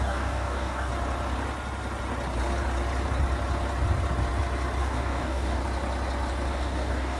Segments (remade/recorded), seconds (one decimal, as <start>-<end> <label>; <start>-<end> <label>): 0.0-0.9 remade; 0.9-4.8 recorded; 4.8-5.6 remade; 5.6-6.5 recorded; 6.5-7.2 remade